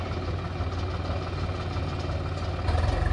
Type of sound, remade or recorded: recorded